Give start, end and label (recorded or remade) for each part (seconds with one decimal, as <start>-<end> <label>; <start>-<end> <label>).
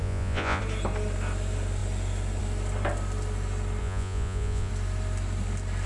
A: 0.0-0.6 remade; 0.6-3.8 recorded; 3.8-4.7 remade; 4.7-5.9 recorded